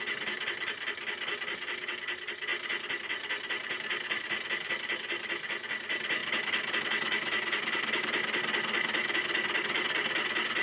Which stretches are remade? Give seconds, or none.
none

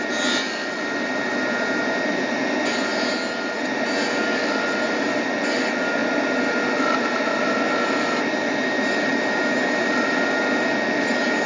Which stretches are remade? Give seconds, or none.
none

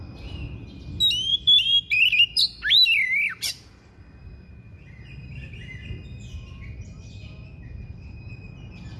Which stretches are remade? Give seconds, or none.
1.3-5.3 (vocoder, BigVGAN v2)

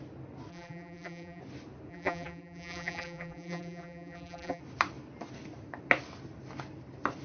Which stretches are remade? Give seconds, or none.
0.5-1.4 (vocoder, BigVGAN v2); 1.9-4.6